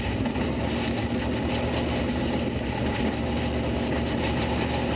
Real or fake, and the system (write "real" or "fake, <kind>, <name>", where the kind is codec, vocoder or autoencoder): real